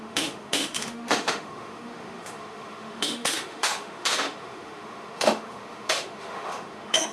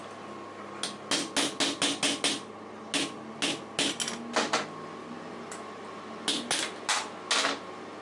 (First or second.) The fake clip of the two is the first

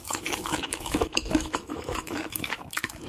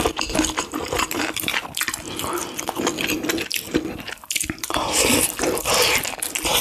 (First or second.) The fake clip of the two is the first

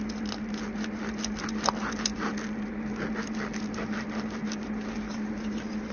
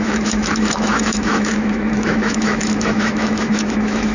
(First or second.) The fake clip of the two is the second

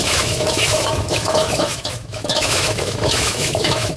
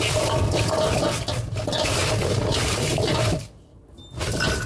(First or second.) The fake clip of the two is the first